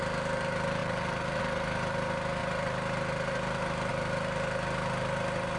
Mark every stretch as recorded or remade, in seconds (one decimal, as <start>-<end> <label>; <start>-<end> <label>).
0.0-0.8 recorded; 0.8-1.4 remade; 1.4-5.6 recorded